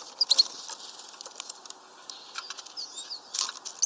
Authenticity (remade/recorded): recorded